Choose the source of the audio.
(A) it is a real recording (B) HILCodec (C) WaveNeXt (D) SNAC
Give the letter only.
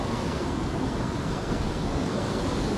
D